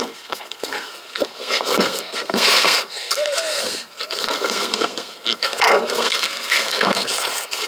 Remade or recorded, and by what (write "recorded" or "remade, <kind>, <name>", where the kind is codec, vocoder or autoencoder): remade, codec, SNAC